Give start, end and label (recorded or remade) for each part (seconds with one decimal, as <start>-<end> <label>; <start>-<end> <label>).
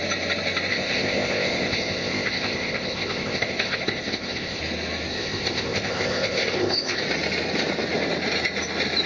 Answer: 0.0-0.7 recorded; 0.7-4.6 remade; 4.6-5.1 recorded; 5.1-7.0 remade; 7.0-9.1 recorded